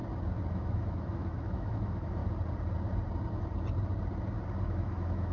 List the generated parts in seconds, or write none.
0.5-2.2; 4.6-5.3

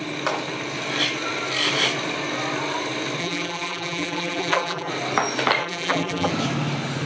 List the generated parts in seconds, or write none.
3.2-4.9; 5.6-6.3

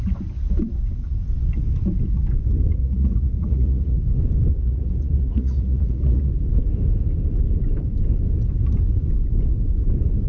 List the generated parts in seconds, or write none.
2.8-4.0; 4.5-6.3

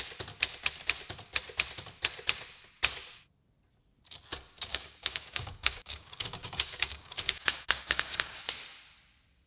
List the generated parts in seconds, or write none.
4.7-8.4